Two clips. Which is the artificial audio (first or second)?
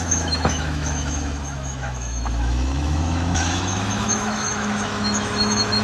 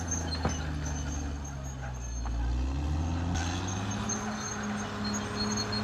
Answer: first